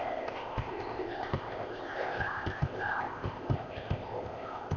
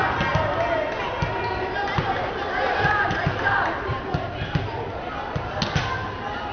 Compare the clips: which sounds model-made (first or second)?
first